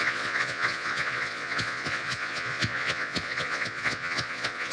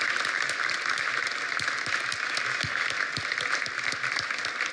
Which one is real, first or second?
second